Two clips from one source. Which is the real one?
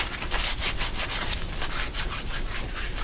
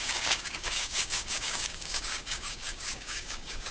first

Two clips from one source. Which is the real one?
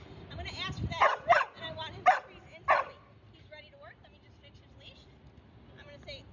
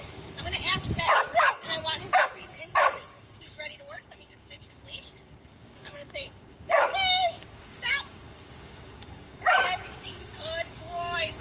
first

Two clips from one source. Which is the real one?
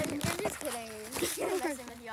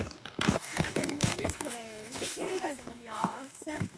first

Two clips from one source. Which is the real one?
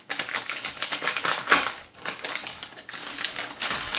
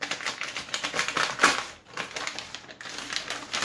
second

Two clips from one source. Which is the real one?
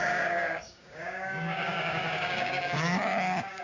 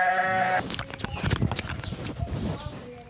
second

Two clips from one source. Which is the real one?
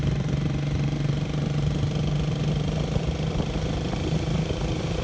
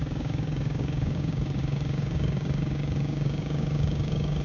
first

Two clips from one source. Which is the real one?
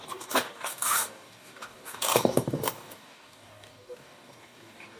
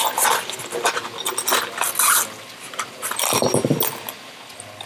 second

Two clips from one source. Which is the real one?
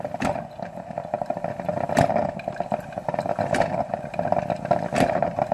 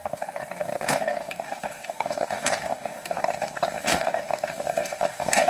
first